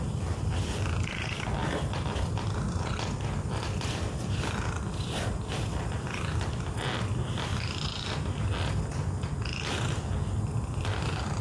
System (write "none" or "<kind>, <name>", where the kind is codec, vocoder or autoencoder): none